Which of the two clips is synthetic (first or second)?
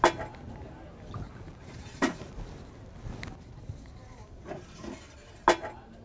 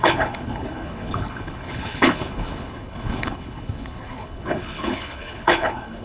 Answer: second